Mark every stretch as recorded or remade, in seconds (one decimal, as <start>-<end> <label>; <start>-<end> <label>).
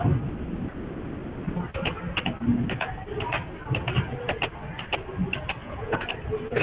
0.0-5.6 recorded; 5.6-6.1 remade; 6.1-6.6 recorded